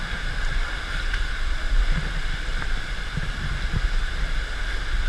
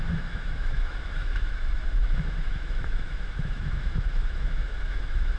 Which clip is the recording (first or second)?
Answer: first